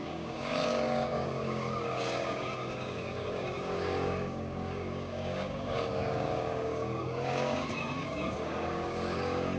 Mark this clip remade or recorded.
remade